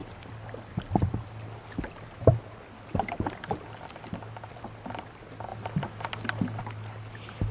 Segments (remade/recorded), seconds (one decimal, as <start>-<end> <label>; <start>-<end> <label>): 0.0-7.5 recorded